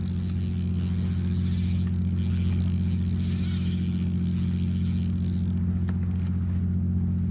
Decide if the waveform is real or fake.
real